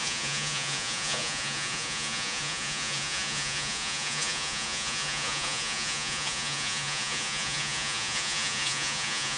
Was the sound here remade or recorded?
remade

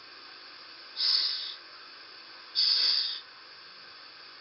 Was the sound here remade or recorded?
remade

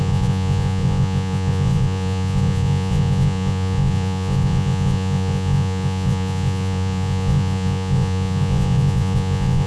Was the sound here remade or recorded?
remade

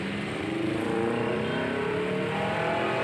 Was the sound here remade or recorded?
recorded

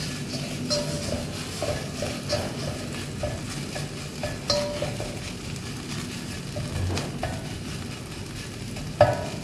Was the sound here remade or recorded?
recorded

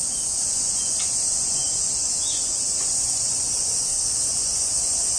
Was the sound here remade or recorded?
remade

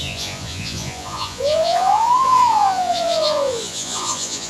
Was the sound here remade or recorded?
remade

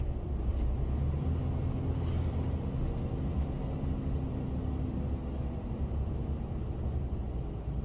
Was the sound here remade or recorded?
recorded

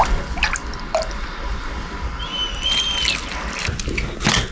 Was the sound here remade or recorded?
recorded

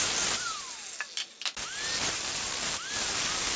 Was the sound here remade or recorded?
recorded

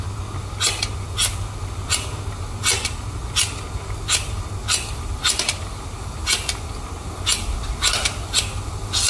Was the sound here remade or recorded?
recorded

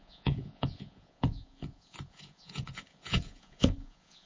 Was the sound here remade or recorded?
remade